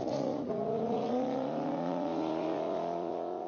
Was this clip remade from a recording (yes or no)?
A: yes